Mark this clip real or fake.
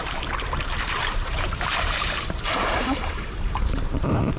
fake